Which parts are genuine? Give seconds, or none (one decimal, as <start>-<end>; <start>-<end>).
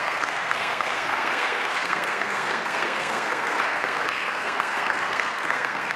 none